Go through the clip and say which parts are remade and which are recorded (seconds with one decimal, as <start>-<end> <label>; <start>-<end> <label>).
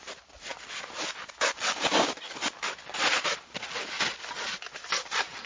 0.0-5.5 recorded